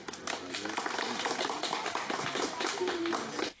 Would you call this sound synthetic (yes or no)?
no